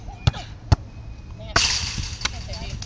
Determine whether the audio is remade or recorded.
recorded